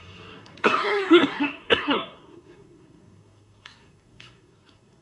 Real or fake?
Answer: fake